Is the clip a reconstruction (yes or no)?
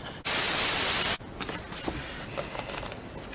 no